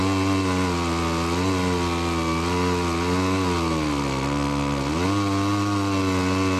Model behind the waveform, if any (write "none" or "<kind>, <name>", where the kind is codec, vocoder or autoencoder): none